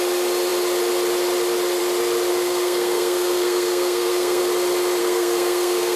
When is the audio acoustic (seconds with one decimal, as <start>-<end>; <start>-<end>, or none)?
0.0-2.3; 4.4-5.0